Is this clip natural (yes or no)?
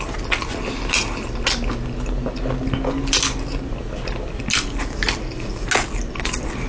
yes